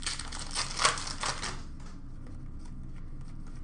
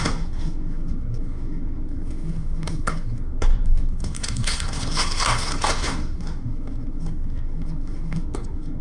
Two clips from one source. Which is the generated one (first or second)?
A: second